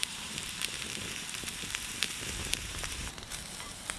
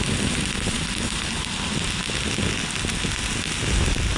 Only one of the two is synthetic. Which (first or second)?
first